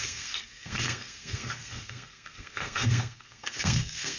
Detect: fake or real fake